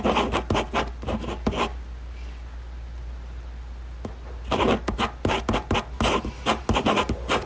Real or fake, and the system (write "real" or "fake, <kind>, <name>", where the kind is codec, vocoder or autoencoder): real